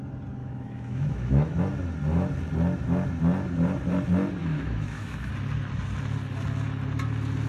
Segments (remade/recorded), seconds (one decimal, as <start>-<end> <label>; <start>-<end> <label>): 0.0-0.4 recorded; 0.4-1.6 remade; 1.6-4.4 recorded; 4.4-5.3 remade; 5.3-7.5 recorded